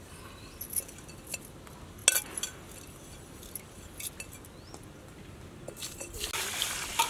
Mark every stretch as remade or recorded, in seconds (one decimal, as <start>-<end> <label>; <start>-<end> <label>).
0.0-7.1 recorded